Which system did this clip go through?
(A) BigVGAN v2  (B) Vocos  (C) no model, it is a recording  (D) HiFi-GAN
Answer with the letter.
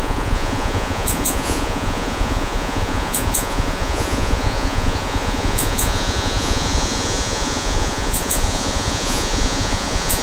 B